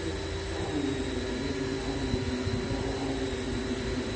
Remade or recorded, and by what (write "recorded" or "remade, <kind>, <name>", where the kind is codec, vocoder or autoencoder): recorded